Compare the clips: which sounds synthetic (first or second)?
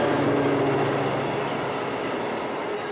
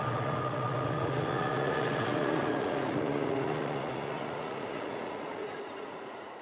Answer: second